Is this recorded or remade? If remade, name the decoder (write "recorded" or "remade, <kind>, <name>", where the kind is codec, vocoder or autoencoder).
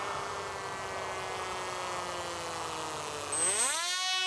recorded